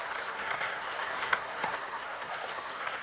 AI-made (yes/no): yes